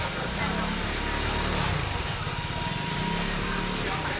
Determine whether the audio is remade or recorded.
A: recorded